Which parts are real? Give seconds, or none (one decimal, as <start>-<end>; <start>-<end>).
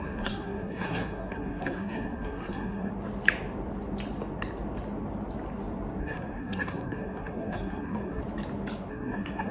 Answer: 2.9-6.0; 8.2-8.9